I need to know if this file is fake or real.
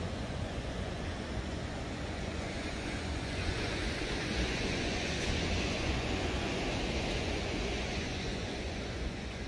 fake